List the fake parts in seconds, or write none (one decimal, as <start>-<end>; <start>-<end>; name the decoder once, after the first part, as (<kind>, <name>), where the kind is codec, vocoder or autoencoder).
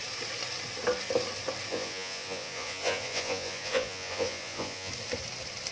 1.7-4.9 (vocoder, Vocos)